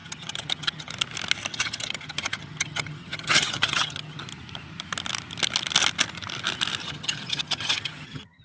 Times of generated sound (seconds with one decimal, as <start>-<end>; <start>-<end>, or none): 0.0-0.9; 1.5-4.2; 6.8-8.4